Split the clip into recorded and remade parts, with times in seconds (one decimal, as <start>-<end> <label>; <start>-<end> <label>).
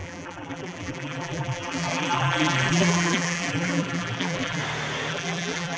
0.0-4.6 remade; 4.6-5.1 recorded; 5.1-5.8 remade